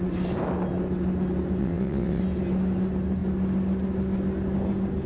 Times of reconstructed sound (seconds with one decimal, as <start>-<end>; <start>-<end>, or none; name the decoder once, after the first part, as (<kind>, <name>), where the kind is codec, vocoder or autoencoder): 1.6-2.2 (vocoder, WaveNeXt)